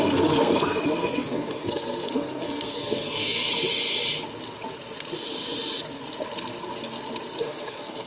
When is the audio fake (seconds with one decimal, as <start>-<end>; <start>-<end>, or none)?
0.0-3.5; 7.4-8.1